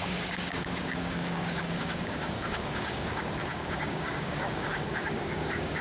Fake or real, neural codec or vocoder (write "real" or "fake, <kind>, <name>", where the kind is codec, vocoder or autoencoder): fake, codec, DAC